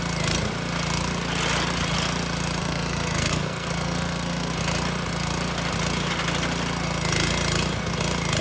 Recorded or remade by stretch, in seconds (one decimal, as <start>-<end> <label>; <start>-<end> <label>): 0.0-2.6 recorded; 2.6-4.5 remade; 4.5-8.4 recorded

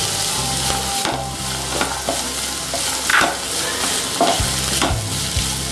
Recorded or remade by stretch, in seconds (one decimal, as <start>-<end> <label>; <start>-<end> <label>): 0.0-5.7 recorded

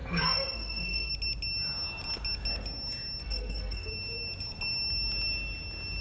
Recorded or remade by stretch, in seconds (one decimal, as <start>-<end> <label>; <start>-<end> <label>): 0.0-1.1 remade; 1.1-3.2 recorded; 3.2-3.9 remade; 3.9-6.0 recorded

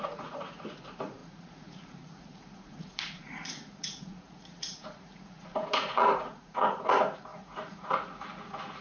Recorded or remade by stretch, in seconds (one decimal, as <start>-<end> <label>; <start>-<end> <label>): 0.0-8.8 remade